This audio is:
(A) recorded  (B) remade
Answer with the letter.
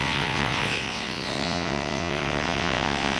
B